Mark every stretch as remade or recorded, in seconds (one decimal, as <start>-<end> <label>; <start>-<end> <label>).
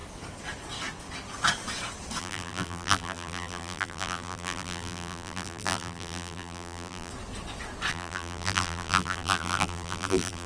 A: 0.0-2.2 recorded; 2.2-7.1 remade; 7.1-7.9 recorded; 7.9-10.5 remade